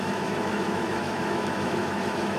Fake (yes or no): yes